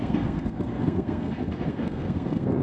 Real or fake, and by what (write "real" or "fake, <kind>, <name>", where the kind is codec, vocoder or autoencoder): fake, codec, SNAC